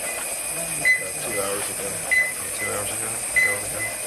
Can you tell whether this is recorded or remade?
recorded